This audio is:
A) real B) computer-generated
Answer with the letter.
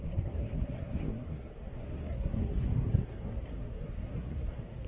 B